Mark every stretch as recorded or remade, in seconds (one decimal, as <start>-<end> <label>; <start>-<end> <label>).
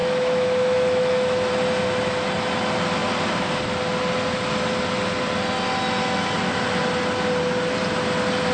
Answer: 0.0-1.5 remade; 1.5-8.5 recorded